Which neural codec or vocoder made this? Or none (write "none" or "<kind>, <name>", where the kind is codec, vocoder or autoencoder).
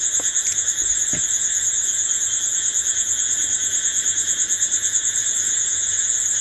vocoder, Vocos